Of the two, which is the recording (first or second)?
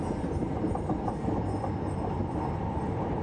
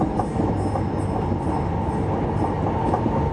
second